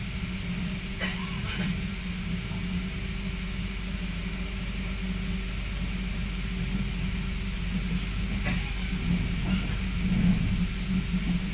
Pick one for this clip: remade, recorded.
recorded